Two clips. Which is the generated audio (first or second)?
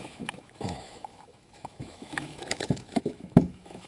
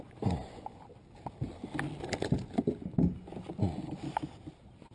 first